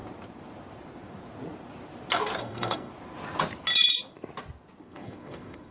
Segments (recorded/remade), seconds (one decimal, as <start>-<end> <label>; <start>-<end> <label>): 0.0-2.4 recorded; 2.4-2.9 remade; 2.9-4.8 recorded; 4.8-5.7 remade